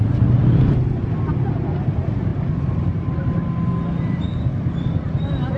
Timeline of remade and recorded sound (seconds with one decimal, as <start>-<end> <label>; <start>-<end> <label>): 0.0-5.6 recorded